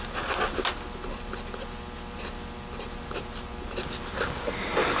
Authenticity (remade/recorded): recorded